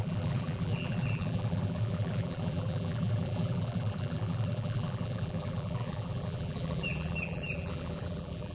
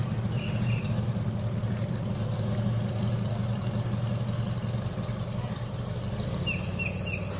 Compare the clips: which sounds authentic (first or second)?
second